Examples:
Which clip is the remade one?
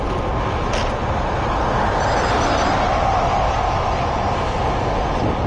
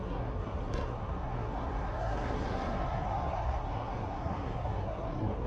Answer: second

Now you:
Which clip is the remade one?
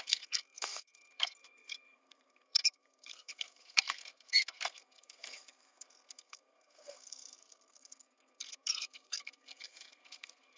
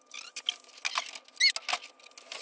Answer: first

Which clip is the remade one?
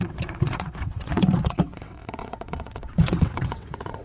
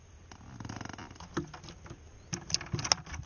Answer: first